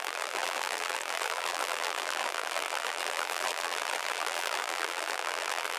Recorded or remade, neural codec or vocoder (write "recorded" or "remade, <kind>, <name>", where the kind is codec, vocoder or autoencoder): remade, vocoder, BigVGAN v2